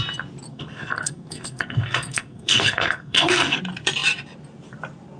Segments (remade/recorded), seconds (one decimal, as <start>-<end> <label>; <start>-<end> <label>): 0.0-0.5 recorded; 0.5-3.6 remade; 3.6-5.2 recorded